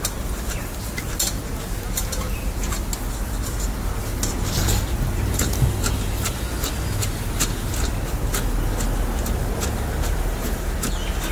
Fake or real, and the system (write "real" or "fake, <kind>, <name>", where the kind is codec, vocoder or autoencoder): real